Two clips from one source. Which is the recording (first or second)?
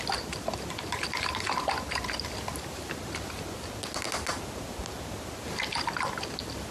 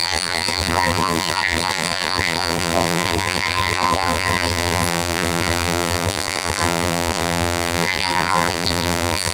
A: first